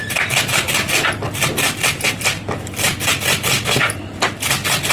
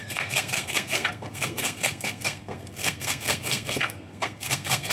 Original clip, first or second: first